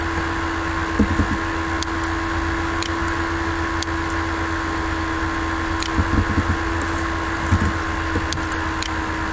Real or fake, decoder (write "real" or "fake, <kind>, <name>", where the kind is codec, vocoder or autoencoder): real